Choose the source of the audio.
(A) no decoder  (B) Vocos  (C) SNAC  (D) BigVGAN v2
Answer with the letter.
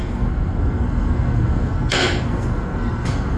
C